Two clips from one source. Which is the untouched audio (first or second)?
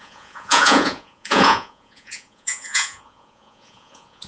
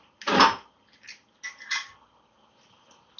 second